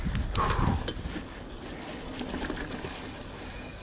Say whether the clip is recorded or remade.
recorded